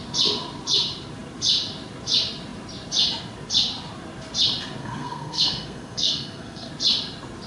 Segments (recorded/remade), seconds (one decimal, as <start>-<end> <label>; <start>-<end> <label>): 0.0-4.8 recorded; 4.8-6.7 remade; 6.7-7.5 recorded